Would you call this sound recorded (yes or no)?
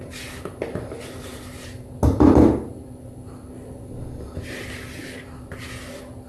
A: yes